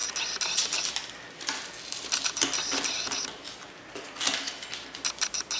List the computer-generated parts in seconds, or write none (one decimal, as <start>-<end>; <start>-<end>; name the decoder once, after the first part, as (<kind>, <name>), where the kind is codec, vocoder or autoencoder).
none